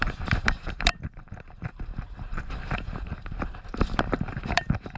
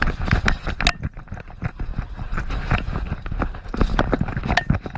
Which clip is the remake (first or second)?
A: first